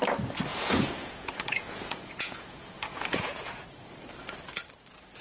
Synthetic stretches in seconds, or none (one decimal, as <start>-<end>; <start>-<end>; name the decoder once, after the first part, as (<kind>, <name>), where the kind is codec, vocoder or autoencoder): 0.5-3.6 (vocoder, Vocos)